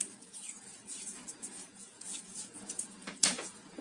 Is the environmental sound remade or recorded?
remade